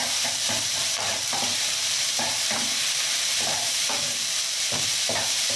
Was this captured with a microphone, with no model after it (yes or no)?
no